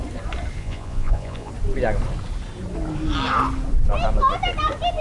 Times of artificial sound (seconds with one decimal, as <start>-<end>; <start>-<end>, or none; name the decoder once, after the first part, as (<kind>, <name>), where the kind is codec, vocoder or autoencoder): 0.6-1.5 (vocoder, Vocos)